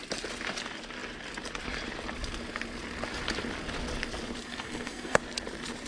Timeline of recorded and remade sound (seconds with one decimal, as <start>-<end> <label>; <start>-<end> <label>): 0.0-4.4 recorded; 4.4-5.2 remade; 5.2-5.9 recorded